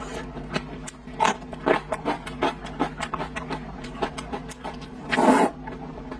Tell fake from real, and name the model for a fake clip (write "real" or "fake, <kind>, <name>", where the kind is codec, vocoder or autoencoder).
real